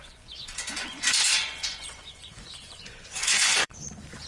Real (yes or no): no